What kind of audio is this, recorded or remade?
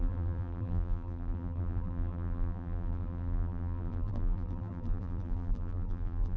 remade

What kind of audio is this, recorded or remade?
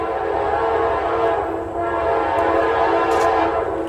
remade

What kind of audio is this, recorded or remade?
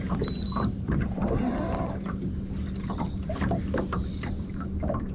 recorded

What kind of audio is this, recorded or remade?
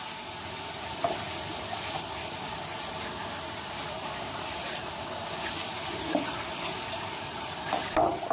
recorded